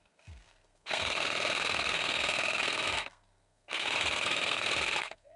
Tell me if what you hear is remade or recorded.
remade